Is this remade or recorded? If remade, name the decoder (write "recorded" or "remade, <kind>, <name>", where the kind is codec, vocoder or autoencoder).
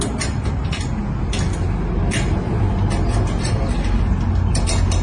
recorded